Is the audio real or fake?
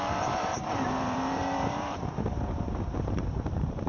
fake